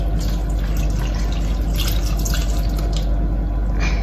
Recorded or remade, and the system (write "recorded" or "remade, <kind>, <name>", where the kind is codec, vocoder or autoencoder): recorded